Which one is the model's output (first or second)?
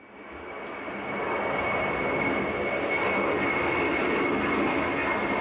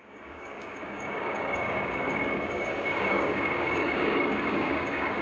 second